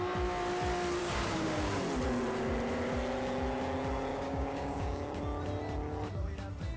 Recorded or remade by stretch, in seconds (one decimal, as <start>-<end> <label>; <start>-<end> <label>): 0.0-1.0 recorded; 1.0-1.7 remade; 1.7-4.1 recorded; 4.1-5.2 remade; 5.2-6.8 recorded